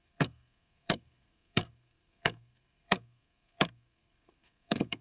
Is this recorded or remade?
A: remade